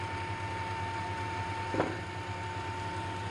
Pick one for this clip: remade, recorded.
recorded